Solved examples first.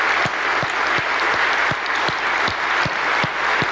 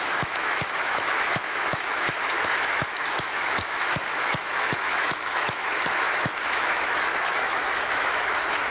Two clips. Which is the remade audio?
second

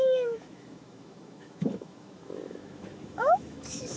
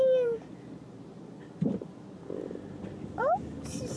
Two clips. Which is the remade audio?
first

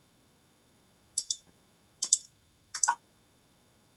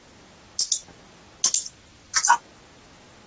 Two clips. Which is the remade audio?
first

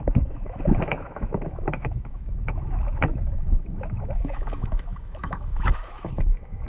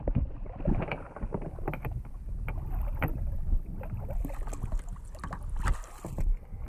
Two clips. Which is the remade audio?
first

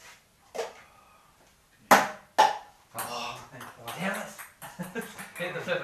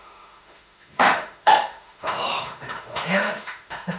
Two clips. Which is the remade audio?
second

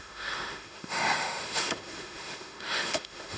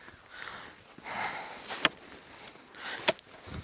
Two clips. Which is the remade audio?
first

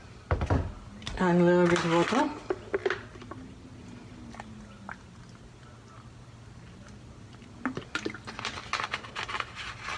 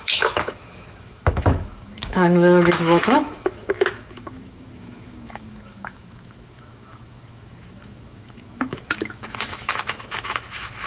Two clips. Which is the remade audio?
second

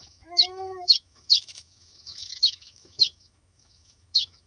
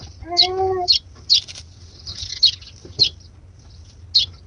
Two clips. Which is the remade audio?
first